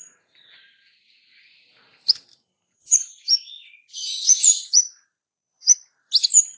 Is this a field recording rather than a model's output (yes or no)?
no